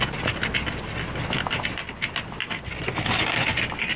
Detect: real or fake real